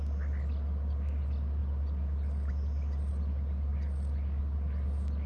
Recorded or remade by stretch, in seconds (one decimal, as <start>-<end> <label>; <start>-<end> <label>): 0.0-5.3 recorded